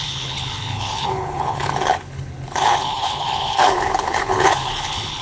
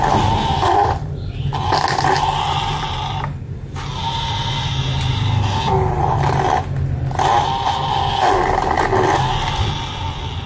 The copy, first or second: first